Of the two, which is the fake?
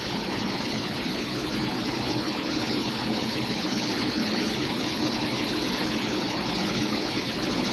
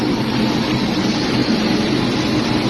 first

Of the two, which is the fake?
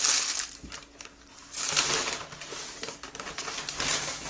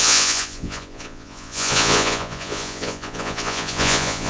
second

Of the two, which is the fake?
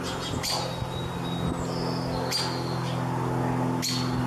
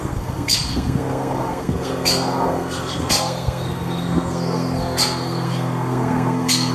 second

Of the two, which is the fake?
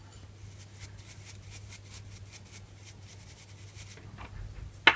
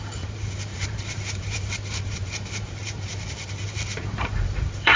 second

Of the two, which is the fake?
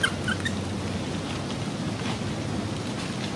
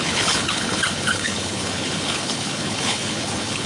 second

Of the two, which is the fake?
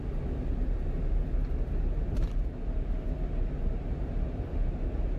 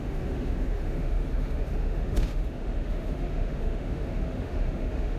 second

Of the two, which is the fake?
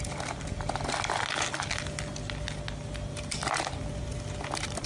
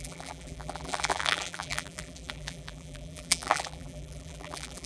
second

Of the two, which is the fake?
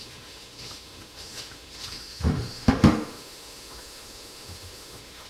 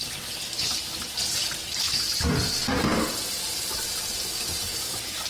first